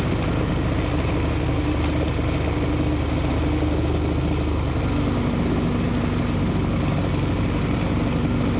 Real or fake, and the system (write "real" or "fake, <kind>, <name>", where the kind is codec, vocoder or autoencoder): real